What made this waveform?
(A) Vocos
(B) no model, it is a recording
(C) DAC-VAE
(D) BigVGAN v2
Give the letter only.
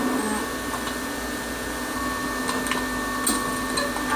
B